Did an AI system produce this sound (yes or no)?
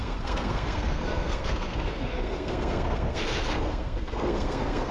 yes